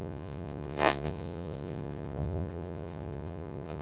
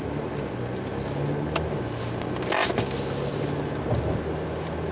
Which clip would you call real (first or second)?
second